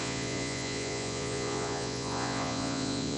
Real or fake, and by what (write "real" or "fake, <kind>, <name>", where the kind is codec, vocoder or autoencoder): fake, vocoder, Vocos